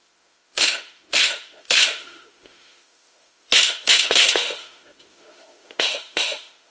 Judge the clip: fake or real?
fake